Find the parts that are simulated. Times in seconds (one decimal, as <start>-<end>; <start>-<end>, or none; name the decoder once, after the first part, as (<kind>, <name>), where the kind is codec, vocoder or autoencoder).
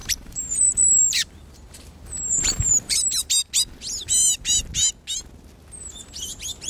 0.0-3.3 (vocoder, BigVGAN v2)